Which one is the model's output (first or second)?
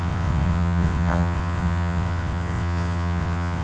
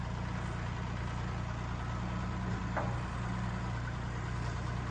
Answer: first